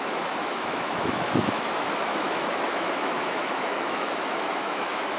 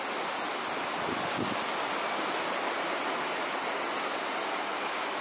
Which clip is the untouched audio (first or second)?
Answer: second